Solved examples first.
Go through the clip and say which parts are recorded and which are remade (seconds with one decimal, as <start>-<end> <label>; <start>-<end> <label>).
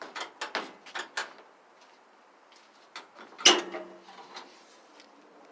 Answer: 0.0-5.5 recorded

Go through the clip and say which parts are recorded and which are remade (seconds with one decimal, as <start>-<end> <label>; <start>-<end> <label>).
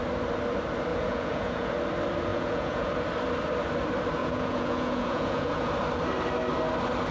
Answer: 0.0-0.9 recorded; 0.9-1.7 remade; 1.7-2.3 recorded; 2.3-2.9 remade; 2.9-4.2 recorded; 4.2-5.7 remade; 5.7-7.1 recorded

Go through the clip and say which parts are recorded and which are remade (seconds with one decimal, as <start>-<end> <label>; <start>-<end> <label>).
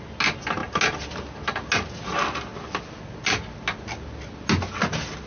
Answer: 0.0-5.3 recorded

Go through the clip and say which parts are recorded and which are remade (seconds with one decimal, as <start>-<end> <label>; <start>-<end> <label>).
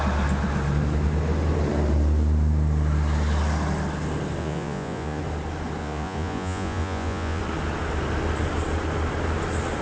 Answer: 0.0-4.4 recorded; 4.4-5.2 remade; 5.2-5.8 recorded; 5.8-7.4 remade; 7.4-9.8 recorded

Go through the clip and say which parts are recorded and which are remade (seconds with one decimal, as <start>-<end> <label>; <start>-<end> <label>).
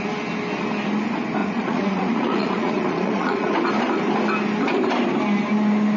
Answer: 0.0-1.4 recorded; 1.4-3.5 remade; 3.5-6.0 recorded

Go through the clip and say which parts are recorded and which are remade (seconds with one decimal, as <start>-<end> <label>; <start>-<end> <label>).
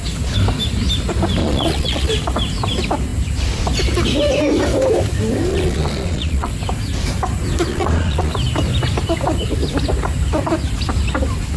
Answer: 0.0-1.4 recorded; 1.4-2.1 remade; 2.1-5.5 recorded; 5.5-6.5 remade; 6.5-7.7 recorded; 7.7-8.3 remade; 8.3-11.6 recorded